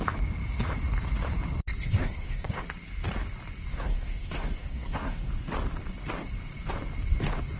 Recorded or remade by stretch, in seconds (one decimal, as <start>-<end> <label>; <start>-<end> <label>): 0.0-1.8 recorded; 1.8-2.6 remade; 2.6-3.7 recorded; 3.7-5.3 remade; 5.3-7.6 recorded